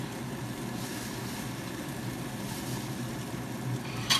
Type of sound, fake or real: real